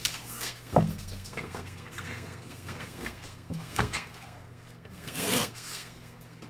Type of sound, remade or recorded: remade